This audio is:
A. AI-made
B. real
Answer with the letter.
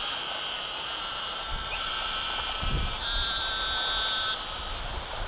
B